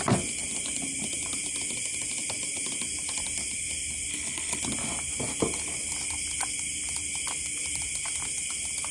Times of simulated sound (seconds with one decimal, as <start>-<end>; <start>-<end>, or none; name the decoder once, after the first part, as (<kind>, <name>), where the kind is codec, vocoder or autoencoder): 4.1-4.6 (codec, HILCodec)